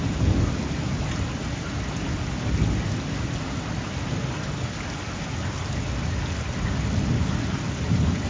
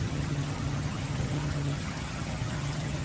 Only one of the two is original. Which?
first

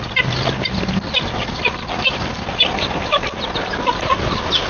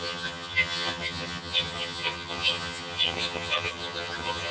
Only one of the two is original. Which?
first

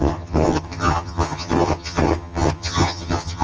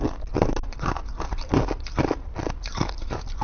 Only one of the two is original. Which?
second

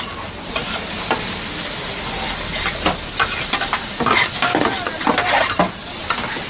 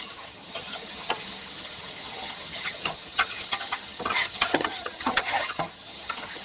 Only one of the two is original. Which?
first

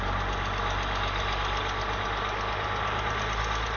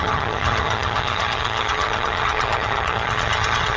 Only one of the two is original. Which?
first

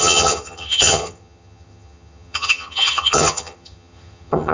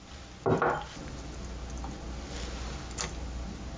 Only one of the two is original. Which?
second